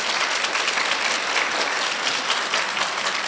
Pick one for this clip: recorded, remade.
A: recorded